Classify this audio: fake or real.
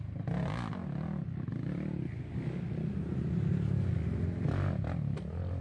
real